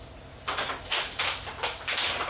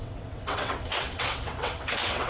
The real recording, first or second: first